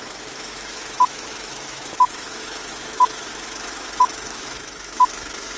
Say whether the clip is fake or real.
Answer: fake